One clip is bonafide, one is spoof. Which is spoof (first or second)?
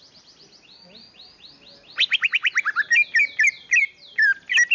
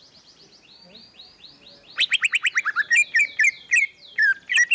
second